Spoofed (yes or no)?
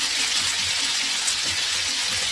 yes